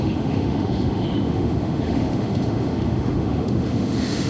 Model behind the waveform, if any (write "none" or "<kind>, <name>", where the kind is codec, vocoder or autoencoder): autoencoder, DAC-VAE